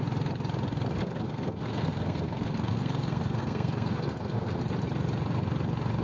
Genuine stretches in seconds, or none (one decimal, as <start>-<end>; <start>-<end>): 0.0-1.0; 4.6-6.0